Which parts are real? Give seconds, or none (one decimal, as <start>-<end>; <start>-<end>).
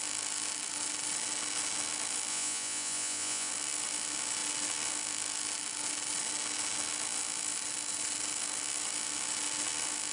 0.0-2.3; 3.5-10.1